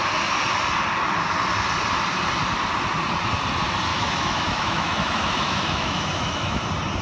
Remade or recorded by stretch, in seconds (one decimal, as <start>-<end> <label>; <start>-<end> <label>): 0.0-3.9 recorded; 3.9-6.6 remade; 6.6-7.0 recorded